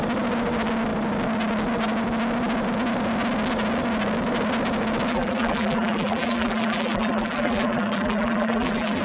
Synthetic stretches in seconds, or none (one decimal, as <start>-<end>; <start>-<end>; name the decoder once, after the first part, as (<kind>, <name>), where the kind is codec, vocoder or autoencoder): 5.1-9.0 (vocoder, BigVGAN v2)